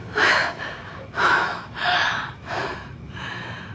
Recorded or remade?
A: remade